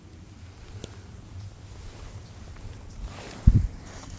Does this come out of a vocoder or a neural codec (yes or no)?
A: no